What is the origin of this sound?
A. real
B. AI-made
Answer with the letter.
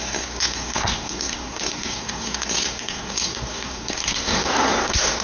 B